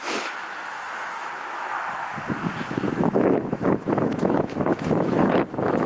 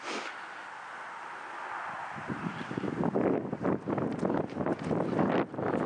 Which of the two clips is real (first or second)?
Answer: second